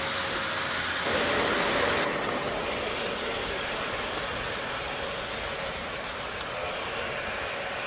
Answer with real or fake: real